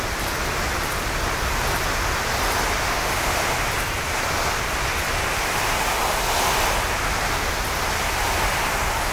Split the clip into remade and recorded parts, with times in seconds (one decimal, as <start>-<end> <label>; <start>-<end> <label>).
0.0-2.8 recorded; 2.8-3.4 remade; 3.4-9.1 recorded